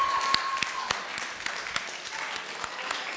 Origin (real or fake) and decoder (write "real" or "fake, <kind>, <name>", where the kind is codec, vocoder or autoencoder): real